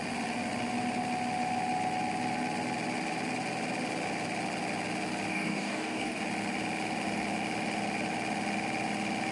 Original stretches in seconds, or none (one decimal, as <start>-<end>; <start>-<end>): 0.0-5.3; 6.2-9.3